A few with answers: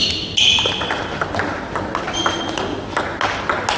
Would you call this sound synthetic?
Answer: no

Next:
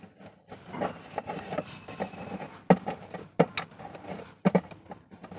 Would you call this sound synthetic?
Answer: no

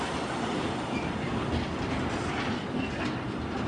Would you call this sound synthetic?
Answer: yes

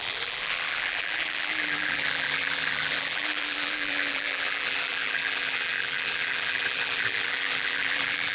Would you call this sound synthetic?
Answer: yes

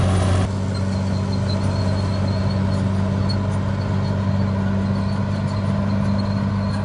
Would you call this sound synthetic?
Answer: no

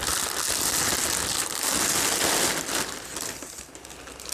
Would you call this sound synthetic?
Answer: no